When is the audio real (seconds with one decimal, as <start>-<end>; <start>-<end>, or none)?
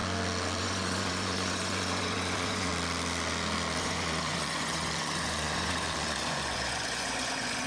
0.0-0.6; 2.7-3.8